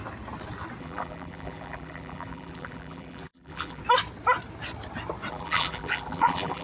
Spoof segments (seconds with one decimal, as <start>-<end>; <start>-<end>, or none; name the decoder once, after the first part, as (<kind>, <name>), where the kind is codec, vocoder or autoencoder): 0.8-3.8 (vocoder, BigVGAN v2); 5.3-6.6